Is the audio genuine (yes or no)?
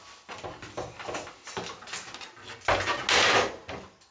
yes